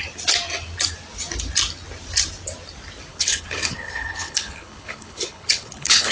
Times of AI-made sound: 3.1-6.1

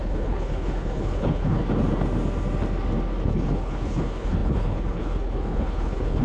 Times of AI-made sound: 0.0-1.6; 3.3-6.2

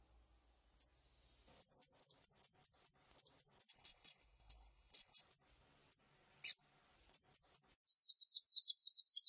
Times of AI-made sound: 3.7-5.2

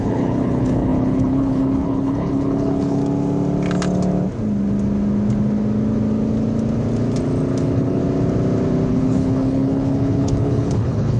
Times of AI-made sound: 0.0-3.0; 7.6-8.0; 8.9-11.2

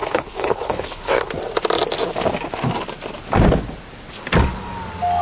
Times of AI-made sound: 0.0-1.3

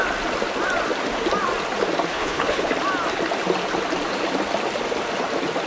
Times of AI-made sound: 2.1-2.7